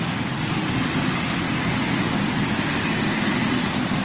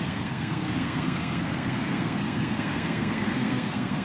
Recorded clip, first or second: first